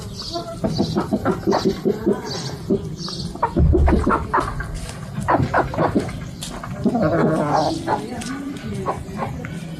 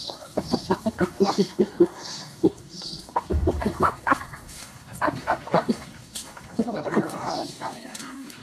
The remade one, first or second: second